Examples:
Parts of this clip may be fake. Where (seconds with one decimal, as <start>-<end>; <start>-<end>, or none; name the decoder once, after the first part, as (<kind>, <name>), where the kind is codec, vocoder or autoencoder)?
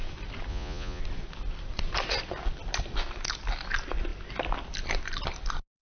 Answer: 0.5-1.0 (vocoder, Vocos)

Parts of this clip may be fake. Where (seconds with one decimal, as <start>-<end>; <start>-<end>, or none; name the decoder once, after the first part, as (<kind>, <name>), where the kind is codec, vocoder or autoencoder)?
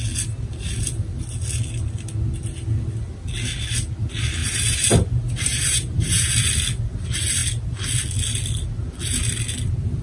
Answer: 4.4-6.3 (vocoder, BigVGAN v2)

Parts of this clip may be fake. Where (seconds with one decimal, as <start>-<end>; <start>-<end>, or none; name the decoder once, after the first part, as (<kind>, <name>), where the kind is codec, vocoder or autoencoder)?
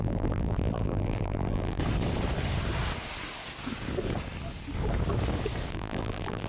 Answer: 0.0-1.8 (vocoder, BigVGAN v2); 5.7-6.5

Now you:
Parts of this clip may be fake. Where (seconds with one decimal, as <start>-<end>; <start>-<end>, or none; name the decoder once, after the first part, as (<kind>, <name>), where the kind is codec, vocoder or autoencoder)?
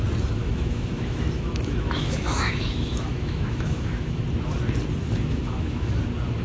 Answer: 0.4-4.2 (autoencoder, DAC-VAE); 5.0-6.0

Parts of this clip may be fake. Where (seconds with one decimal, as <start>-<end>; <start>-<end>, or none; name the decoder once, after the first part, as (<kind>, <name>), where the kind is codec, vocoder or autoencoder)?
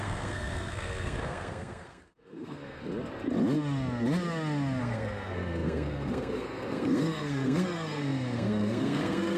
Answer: 0.0-2.8 (codec, SNAC); 4.8-9.4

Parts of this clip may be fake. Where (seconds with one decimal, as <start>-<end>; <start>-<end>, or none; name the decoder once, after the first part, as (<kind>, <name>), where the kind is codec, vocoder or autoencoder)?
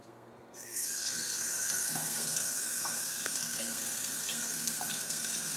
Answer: 0.0-5.6 (codec, SNAC)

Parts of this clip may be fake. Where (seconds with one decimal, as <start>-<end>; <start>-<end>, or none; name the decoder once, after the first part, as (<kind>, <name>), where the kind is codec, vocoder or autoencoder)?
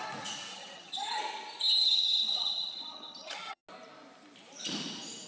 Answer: 0.5-1.2 (vocoder, HiFi-GAN); 1.8-3.6